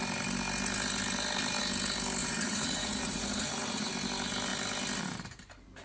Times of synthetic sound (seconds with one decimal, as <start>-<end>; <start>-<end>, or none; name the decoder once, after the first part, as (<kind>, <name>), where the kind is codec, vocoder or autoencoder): 2.2-3.9 (vocoder, Vocos)